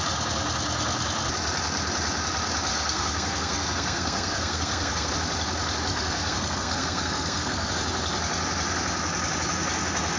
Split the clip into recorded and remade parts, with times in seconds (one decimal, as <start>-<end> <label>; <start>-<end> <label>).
0.0-2.7 recorded; 2.7-5.1 remade; 5.1-5.9 recorded; 5.9-7.7 remade; 7.7-10.2 recorded